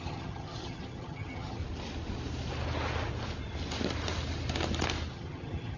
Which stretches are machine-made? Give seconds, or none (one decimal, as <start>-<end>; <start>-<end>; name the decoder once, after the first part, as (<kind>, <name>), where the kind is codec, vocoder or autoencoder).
0.0-1.6 (vocoder, HiFi-GAN); 5.1-5.8